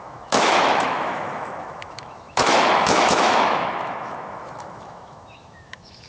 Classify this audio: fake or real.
fake